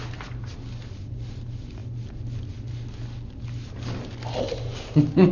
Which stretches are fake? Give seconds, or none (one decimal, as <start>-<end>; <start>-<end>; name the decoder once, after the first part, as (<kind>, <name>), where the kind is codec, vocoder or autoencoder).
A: none